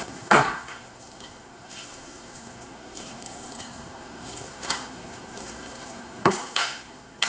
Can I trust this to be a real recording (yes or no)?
no